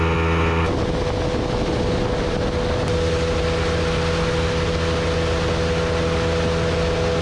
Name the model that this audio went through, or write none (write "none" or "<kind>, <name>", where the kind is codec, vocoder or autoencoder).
none